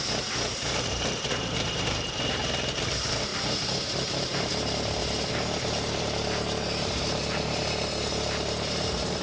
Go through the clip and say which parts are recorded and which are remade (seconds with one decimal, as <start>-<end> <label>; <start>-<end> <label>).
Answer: 0.0-9.2 remade

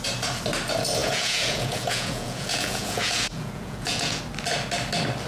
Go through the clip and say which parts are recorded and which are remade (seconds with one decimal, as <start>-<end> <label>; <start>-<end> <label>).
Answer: 0.0-1.0 recorded; 1.0-4.2 remade; 4.2-5.3 recorded

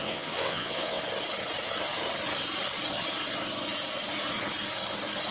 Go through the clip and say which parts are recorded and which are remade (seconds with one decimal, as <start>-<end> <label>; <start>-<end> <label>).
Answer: 0.0-1.0 remade; 1.0-5.3 recorded